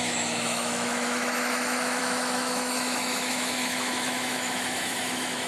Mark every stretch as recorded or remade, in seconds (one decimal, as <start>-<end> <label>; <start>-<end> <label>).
0.0-5.5 remade